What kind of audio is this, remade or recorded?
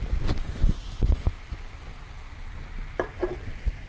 recorded